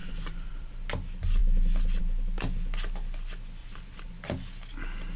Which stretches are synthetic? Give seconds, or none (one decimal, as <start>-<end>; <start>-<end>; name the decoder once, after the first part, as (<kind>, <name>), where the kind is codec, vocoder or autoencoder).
0.0-0.8 (vocoder, BigVGAN v2); 3.6-4.1